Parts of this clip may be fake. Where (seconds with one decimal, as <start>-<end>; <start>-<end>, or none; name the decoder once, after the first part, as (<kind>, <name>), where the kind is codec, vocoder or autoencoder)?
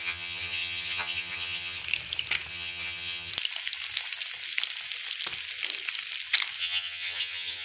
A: 0.0-1.8 (vocoder, HiFi-GAN); 2.5-3.3; 6.6-7.6